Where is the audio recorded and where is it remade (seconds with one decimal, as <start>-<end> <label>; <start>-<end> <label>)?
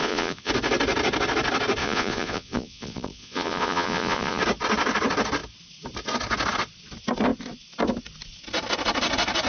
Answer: 0.0-0.5 remade; 0.5-1.8 recorded; 1.8-4.4 remade; 4.4-9.5 recorded